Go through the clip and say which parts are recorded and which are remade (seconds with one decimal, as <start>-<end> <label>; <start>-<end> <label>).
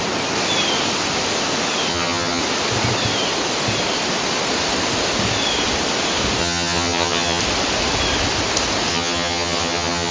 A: 0.0-1.9 recorded; 1.9-2.4 remade; 2.4-6.4 recorded; 6.4-7.4 remade; 7.4-8.9 recorded; 8.9-10.1 remade